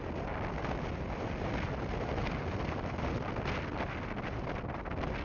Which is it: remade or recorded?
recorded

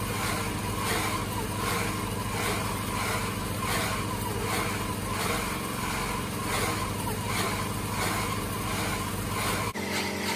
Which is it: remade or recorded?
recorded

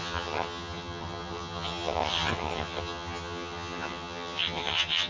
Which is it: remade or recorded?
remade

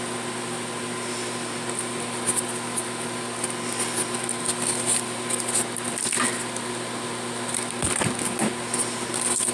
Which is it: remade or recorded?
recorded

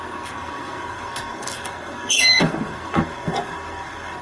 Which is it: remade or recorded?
remade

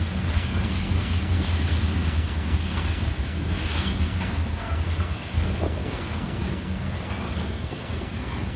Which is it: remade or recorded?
remade